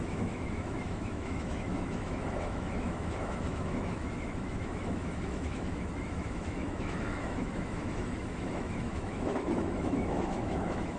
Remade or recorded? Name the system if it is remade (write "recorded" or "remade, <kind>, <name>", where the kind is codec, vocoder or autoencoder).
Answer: remade, autoencoder, DAC-VAE